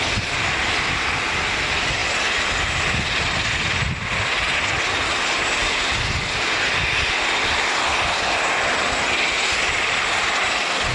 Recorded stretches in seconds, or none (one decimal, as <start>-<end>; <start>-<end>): 0.0-10.9